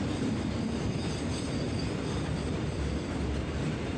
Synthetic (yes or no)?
yes